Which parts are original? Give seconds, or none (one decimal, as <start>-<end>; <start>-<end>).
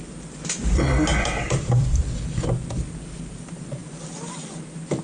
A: 0.0-1.1; 2.0-5.0